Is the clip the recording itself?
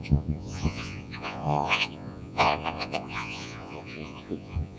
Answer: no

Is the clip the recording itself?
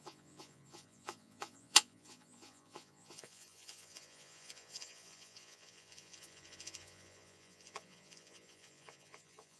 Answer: no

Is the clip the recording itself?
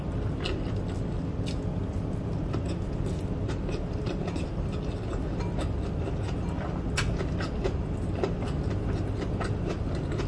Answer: yes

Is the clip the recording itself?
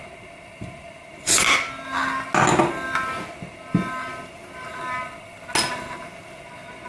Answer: yes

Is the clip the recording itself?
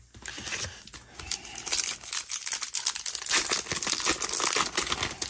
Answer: yes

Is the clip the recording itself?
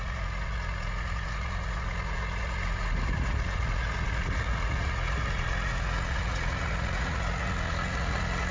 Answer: no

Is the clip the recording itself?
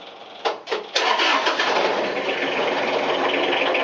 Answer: yes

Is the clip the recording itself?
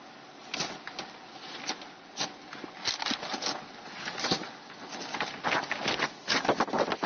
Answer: yes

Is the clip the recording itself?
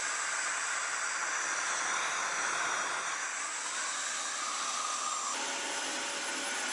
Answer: yes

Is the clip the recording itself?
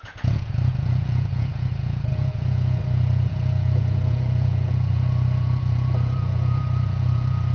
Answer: no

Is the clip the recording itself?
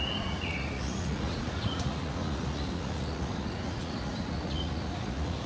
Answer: no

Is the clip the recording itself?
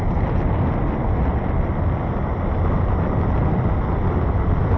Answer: yes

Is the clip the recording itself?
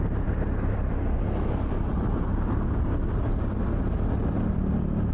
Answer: yes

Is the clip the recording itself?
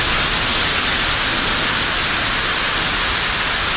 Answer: yes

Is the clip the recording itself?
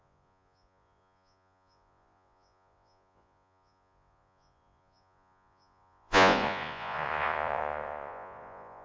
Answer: no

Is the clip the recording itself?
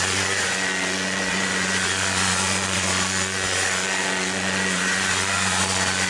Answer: no